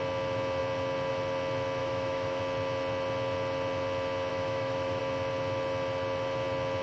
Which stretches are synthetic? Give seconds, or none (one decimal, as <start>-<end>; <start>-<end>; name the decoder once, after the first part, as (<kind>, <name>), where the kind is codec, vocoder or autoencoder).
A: 1.8-2.4 (autoencoder, DAC-VAE); 4.3-5.0

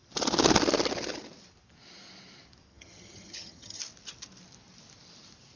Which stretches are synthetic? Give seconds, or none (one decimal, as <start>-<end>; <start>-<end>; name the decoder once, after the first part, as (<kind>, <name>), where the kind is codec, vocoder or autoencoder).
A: 2.7-3.8 (vocoder, HiFi-GAN)

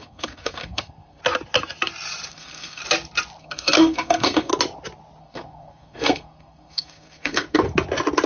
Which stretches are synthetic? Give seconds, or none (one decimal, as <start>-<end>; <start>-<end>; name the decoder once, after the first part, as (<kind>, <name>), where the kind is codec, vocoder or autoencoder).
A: 0.0-1.2 (codec, SNAC); 2.3-2.8; 3.4-4.5; 5.2-7.6

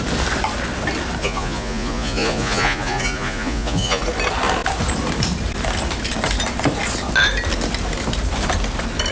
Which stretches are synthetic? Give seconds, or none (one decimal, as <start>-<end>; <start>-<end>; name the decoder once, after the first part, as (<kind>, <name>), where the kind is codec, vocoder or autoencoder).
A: 1.2-4.0 (vocoder, Vocos)

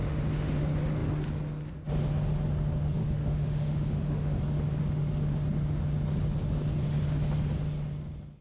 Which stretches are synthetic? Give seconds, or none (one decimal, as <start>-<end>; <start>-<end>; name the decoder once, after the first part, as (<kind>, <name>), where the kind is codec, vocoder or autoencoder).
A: 0.0-0.6 (autoencoder, DAC-VAE); 3.0-4.4